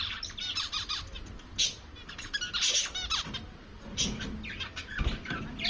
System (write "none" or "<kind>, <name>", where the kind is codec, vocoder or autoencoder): none